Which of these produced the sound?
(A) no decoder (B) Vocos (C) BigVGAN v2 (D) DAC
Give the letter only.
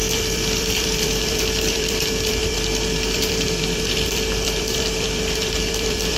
C